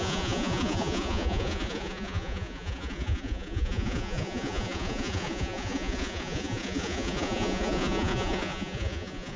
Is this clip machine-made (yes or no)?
yes